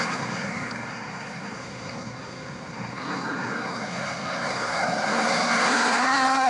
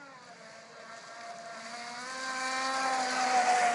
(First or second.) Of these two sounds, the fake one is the first